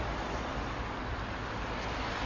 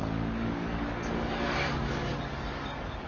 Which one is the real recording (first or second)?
first